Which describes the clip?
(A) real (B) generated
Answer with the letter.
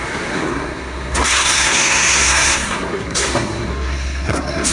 B